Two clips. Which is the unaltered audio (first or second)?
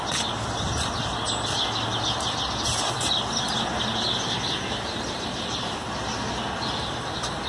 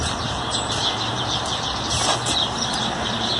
first